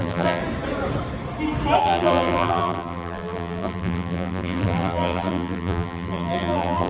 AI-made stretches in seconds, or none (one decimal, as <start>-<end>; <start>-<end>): 0.0-0.4; 1.8-6.9

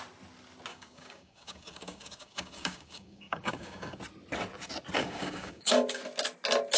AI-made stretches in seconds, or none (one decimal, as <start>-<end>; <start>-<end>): 0.7-4.0; 5.0-6.0

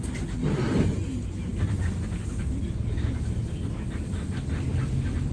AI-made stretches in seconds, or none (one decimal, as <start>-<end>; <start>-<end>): none